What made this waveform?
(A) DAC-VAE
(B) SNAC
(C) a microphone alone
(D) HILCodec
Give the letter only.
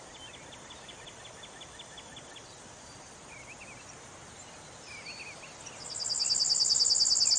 C